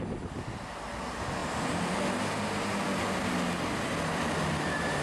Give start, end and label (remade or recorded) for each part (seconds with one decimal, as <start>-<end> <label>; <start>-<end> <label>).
0.0-5.0 recorded